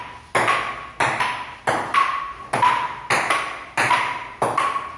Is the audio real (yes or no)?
yes